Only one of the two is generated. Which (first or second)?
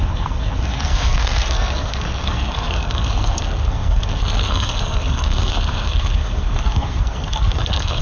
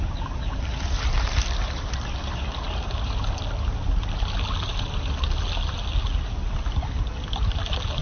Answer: first